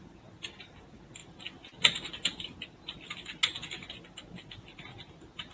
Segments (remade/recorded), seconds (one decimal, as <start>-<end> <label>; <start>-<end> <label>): 0.0-5.5 recorded